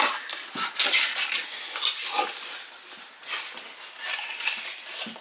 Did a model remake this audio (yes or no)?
no